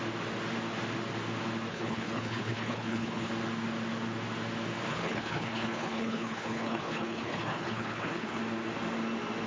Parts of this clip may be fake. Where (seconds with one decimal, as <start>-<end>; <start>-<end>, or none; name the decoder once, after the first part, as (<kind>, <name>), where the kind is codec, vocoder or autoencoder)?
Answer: 1.7-3.3 (codec, HILCodec); 4.9-8.4